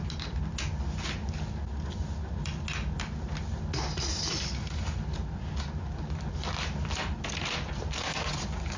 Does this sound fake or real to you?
real